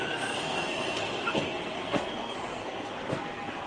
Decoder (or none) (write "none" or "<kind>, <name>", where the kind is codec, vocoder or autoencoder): codec, SNAC